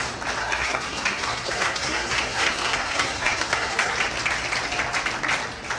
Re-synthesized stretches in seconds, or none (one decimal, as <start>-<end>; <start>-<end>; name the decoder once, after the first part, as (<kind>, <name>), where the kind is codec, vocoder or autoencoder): 0.4-3.9 (codec, SNAC)